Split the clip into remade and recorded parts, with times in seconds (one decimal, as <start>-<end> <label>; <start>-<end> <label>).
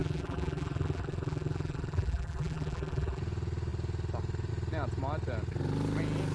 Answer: 0.0-3.2 remade; 3.2-6.3 recorded